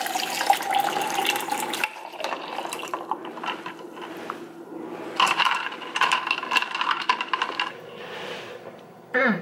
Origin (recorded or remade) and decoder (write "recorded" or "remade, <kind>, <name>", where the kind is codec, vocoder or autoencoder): remade, vocoder, BigVGAN v2